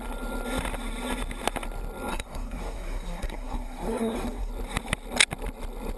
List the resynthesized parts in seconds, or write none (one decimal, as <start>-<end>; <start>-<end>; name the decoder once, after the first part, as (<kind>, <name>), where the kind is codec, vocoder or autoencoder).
2.1-4.5 (codec, SNAC)